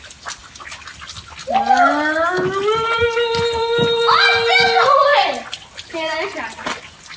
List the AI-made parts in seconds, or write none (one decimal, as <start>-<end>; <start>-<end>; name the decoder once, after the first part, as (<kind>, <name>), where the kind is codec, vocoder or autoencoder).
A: none